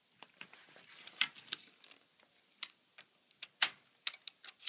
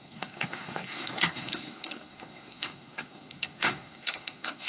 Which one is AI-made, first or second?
second